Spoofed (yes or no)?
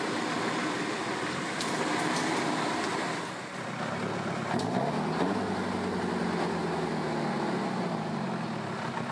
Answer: no